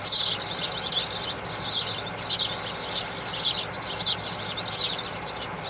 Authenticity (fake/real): real